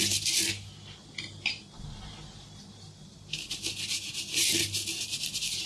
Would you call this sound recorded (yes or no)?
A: yes